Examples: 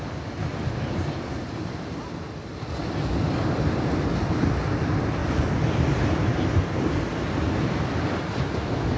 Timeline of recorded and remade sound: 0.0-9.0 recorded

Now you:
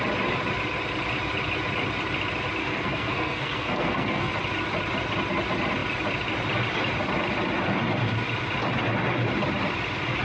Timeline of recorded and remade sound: 0.0-2.6 recorded; 2.6-4.3 remade; 4.3-10.2 recorded

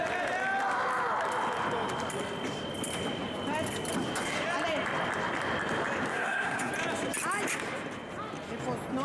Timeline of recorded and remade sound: 0.0-6.1 recorded; 6.1-6.7 remade; 6.7-9.0 recorded

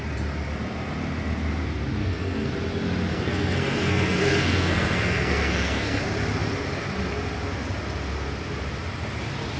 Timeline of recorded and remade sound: 0.0-2.0 recorded; 2.0-2.5 remade; 2.5-3.1 recorded; 3.1-6.0 remade; 6.0-9.6 recorded

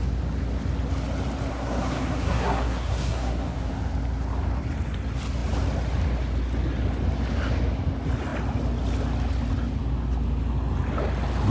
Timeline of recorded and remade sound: 0.0-1.5 recorded; 1.5-3.7 remade; 3.7-11.5 recorded

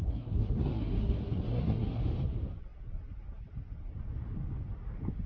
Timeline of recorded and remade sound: 0.0-2.0 remade; 2.0-5.3 recorded

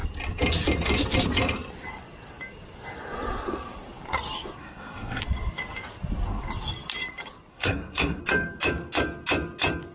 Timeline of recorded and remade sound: 0.0-4.6 recorded; 4.6-5.2 remade; 5.2-7.5 recorded; 7.5-8.2 remade; 8.2-9.9 recorded